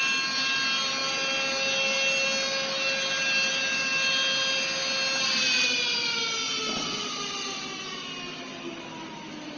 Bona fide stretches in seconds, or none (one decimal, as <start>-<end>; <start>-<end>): 0.0-9.6